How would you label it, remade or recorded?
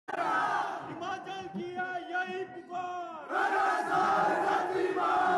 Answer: recorded